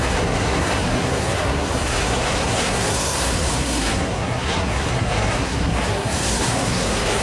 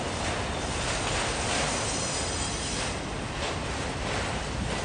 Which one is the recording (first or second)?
second